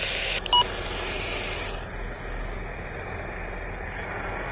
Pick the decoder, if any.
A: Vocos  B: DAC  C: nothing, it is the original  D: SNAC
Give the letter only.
C